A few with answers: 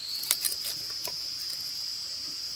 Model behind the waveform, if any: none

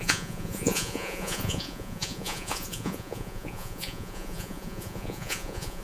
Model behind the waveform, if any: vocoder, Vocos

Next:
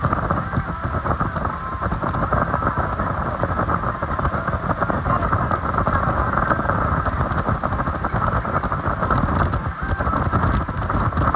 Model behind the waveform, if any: none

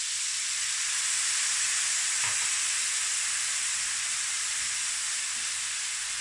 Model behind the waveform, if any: none